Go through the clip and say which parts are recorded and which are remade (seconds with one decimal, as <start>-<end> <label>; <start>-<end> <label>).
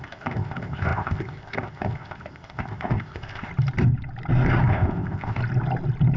0.0-3.5 remade; 3.5-4.7 recorded; 4.7-5.4 remade; 5.4-6.2 recorded